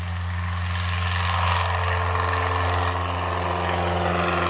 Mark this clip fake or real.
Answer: real